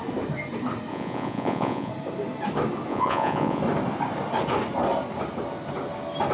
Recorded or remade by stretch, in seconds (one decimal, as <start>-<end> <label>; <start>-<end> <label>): 0.0-0.9 recorded; 0.9-1.9 remade; 1.9-2.9 recorded; 2.9-3.6 remade; 3.6-6.3 recorded